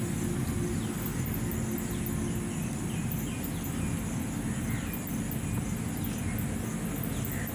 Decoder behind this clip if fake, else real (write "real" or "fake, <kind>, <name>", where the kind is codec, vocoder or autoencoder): real